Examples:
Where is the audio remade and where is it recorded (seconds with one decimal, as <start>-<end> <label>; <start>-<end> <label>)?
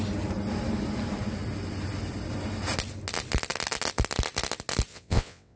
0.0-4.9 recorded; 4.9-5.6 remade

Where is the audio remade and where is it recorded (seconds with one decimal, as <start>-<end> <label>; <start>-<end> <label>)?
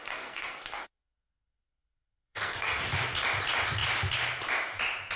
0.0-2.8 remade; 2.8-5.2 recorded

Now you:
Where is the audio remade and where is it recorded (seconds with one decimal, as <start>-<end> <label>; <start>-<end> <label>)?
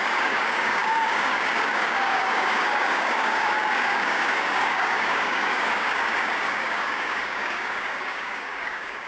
0.0-9.1 remade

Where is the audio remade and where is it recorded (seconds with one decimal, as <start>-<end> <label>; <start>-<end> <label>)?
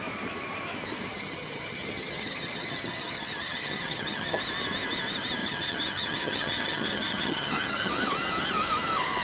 0.0-1.1 recorded; 1.1-4.4 remade; 4.4-5.4 recorded; 5.4-7.9 remade; 7.9-9.2 recorded